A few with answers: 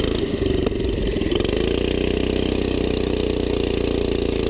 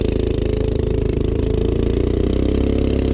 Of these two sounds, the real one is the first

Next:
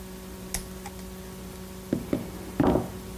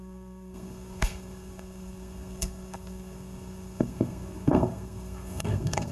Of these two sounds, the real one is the first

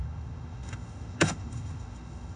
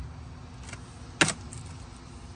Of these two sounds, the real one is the second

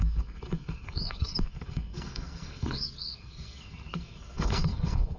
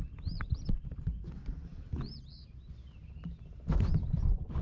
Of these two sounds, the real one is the second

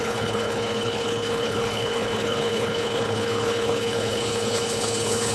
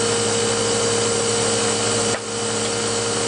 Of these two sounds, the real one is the second